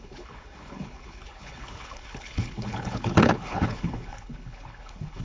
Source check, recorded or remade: remade